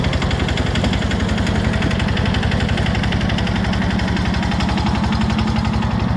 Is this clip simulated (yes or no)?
no